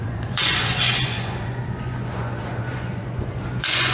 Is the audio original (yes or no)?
no